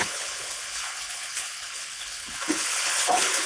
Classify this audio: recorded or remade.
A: remade